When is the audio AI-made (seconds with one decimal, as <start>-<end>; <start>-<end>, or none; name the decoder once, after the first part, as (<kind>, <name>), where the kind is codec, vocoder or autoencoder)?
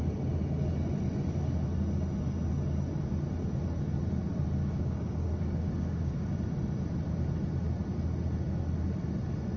4.6-6.3 (codec, DAC)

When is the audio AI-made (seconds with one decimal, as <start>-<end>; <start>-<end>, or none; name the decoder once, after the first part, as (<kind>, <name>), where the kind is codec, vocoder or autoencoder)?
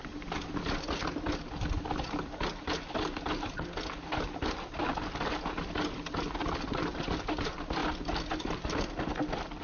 none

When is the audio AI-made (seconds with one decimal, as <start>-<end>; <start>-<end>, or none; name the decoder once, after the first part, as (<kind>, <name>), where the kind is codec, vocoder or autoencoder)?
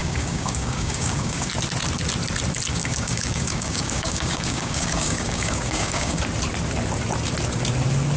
0.0-1.5 (codec, DAC); 2.7-6.2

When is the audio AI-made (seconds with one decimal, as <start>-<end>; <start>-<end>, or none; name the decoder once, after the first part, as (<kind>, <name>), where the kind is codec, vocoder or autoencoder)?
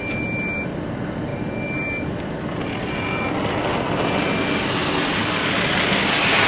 5.2-5.8 (codec, DAC)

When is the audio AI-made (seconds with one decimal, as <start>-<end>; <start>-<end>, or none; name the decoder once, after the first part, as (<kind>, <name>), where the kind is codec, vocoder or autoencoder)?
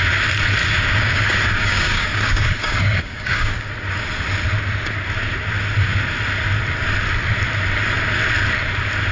0.6-3.7 (codec, DAC)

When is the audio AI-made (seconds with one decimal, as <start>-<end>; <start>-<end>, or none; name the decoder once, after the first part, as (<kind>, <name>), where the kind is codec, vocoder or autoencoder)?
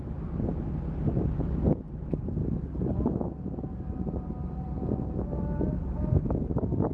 2.4-3.1 (codec, DAC); 6.2-6.9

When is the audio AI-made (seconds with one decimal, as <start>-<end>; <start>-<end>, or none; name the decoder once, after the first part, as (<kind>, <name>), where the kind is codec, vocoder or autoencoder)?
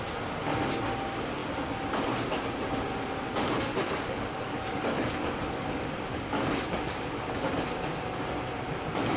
3.7-7.2 (codec, DAC)